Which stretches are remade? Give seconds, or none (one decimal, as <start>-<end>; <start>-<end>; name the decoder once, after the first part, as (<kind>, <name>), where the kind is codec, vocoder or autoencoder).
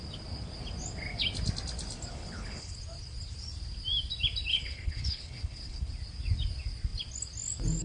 2.1-2.7 (codec, HILCodec); 4.5-5.9